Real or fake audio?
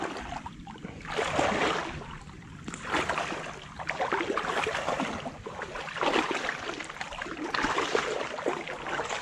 real